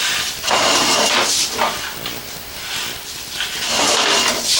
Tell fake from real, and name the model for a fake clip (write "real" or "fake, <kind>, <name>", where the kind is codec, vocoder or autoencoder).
real